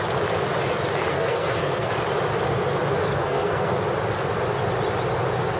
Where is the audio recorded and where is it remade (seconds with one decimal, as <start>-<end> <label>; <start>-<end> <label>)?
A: 0.0-1.1 recorded; 1.1-1.9 remade; 1.9-3.0 recorded; 3.0-3.7 remade; 3.7-5.6 recorded